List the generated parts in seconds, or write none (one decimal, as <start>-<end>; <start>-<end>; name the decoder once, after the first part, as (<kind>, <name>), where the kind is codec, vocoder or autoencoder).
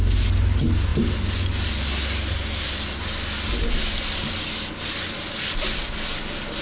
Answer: none